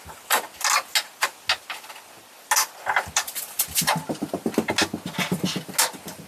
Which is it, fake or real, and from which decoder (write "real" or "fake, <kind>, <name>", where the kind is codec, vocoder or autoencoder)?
real